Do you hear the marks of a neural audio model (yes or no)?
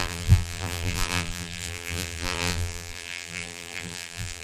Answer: yes